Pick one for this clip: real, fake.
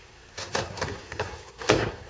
fake